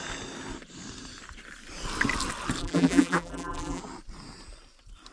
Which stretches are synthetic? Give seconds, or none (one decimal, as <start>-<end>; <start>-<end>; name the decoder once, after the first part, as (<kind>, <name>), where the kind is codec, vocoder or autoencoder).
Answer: 2.6-3.8 (vocoder, BigVGAN v2)